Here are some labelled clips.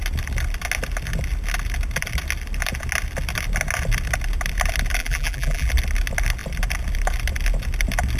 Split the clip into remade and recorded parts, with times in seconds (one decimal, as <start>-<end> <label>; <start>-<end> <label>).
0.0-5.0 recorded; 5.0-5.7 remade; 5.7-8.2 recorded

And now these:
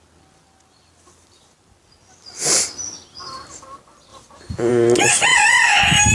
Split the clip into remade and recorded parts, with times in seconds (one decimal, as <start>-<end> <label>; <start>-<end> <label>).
0.0-5.3 recorded; 5.3-6.1 remade

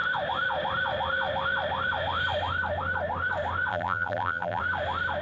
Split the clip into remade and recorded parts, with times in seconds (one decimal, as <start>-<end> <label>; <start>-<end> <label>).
0.0-3.7 recorded; 3.7-4.6 remade; 4.6-5.2 recorded

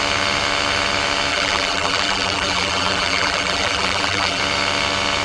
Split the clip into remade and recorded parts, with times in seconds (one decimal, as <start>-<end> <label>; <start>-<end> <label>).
0.0-1.3 recorded; 1.3-4.4 remade; 4.4-5.2 recorded